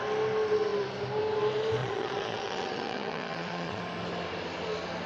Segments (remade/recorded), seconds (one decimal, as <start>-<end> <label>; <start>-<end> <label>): 0.0-1.8 recorded; 1.8-3.8 remade; 3.8-5.1 recorded